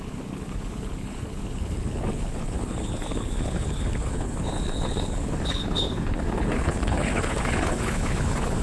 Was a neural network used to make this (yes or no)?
yes